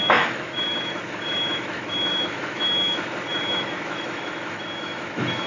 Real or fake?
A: fake